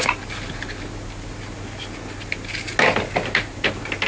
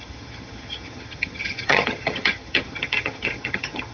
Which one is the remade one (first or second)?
second